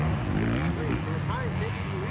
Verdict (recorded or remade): recorded